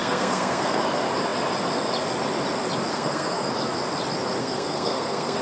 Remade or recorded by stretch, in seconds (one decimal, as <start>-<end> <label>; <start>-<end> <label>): 0.0-0.8 remade; 0.8-2.9 recorded; 2.9-3.5 remade; 3.5-4.4 recorded; 4.4-5.4 remade